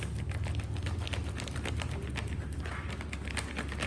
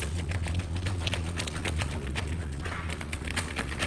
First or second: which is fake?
second